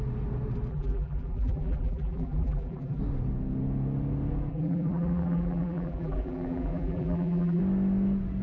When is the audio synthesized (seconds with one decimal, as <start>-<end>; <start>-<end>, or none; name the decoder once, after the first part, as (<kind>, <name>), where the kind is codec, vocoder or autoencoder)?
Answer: 0.7-3.0 (vocoder, BigVGAN v2); 4.5-7.6